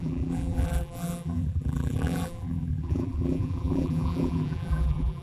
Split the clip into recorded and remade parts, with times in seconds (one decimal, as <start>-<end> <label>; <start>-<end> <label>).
0.0-5.2 remade